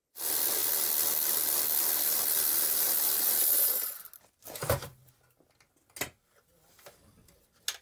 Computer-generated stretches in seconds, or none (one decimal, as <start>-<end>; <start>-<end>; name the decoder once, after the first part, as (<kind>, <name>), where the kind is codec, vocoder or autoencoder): none